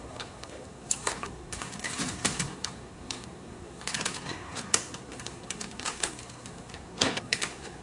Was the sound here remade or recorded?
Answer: remade